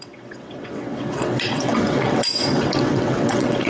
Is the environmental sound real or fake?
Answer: fake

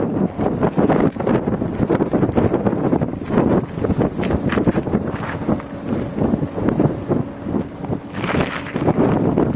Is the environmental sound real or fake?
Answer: real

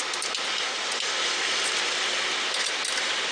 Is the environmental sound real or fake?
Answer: real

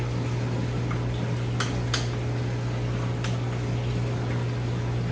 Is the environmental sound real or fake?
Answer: real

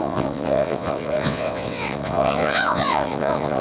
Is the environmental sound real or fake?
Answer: fake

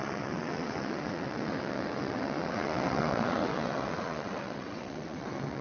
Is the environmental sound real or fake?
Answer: fake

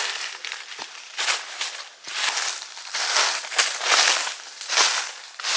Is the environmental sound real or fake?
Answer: real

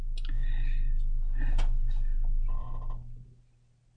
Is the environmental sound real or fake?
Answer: real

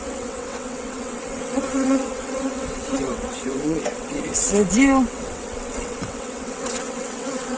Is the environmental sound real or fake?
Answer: fake